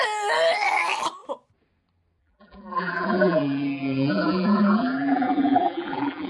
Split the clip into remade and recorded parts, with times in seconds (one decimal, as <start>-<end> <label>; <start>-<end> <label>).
0.0-2.2 recorded; 2.2-6.3 remade

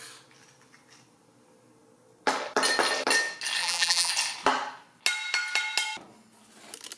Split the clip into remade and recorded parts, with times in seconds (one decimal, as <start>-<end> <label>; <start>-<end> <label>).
0.0-3.6 recorded; 3.6-4.1 remade; 4.1-7.0 recorded